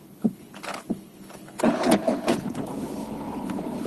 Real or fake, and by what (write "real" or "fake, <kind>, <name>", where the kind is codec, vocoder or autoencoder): fake, codec, HILCodec